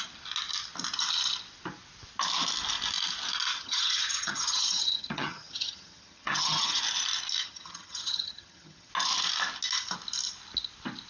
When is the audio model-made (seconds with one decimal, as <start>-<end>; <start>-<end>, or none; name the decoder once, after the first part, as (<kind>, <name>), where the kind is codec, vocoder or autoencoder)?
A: 3.5-6.8 (vocoder, HiFi-GAN); 7.4-8.9